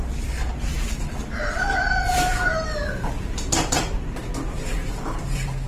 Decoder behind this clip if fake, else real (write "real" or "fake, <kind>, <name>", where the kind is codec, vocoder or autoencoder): fake, vocoder, BigVGAN v2